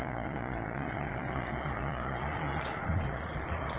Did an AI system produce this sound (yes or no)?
yes